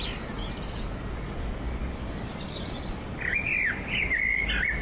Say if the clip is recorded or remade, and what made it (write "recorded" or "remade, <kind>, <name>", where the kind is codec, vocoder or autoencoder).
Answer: remade, vocoder, BigVGAN v2